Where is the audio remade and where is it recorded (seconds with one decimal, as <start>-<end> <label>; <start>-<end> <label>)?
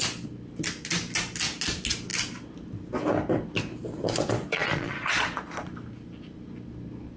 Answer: 0.0-4.4 recorded; 4.4-5.7 remade; 5.7-7.2 recorded